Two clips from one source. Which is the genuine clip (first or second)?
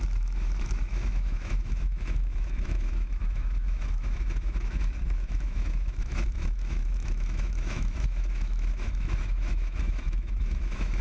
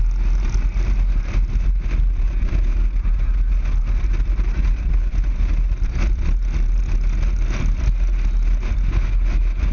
second